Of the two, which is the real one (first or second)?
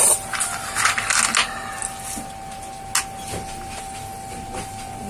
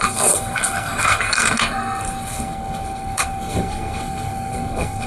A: first